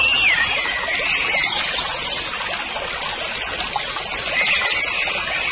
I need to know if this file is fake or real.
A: real